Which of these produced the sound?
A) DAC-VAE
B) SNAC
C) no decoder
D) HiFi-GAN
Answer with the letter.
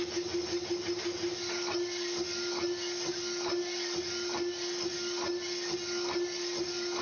C